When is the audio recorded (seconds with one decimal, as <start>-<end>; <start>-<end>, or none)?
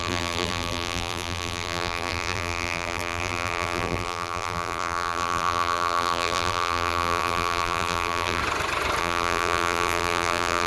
8.4-9.0